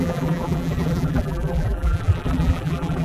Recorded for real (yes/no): no